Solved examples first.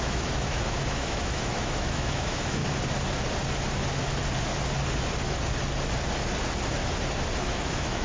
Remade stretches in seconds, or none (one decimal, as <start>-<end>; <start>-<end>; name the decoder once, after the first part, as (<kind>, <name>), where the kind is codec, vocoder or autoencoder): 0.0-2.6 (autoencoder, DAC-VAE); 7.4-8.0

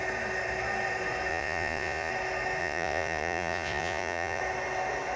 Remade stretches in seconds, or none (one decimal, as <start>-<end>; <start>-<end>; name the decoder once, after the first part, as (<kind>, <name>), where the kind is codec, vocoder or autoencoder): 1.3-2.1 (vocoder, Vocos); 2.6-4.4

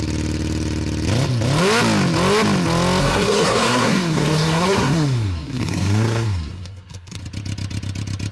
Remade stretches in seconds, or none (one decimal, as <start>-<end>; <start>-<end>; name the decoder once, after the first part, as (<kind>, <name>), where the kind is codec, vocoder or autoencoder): 3.0-7.2 (codec, SNAC)